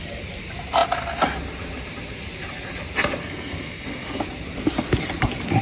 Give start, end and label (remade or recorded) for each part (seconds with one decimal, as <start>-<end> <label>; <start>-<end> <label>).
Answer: 0.0-3.2 recorded; 3.2-4.2 remade; 4.2-5.6 recorded